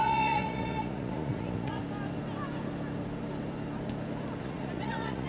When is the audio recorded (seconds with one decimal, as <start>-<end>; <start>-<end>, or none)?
1.8-4.4